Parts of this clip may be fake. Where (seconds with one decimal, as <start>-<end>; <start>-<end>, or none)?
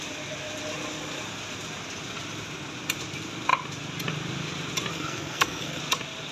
4.9-5.8